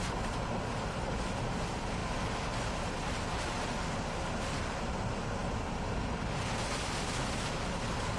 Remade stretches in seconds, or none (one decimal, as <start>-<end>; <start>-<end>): none